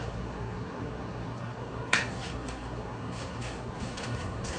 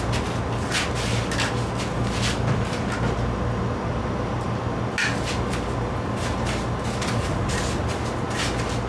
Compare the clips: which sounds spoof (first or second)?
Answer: first